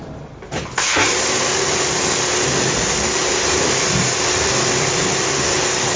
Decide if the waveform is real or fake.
real